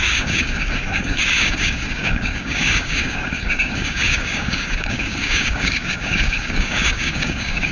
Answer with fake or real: fake